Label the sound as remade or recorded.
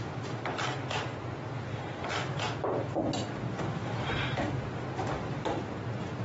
recorded